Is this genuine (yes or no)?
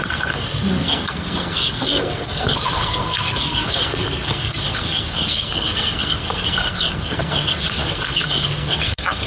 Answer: no